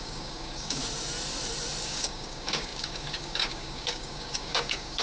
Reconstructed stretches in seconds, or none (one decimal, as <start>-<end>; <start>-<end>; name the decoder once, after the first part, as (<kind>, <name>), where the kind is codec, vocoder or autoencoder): 0.0-0.8 (codec, DAC); 1.8-5.0